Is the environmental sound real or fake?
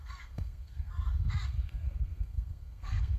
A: fake